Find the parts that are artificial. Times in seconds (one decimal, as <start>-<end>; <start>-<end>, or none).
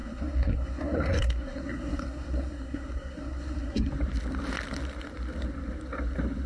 0.0-3.9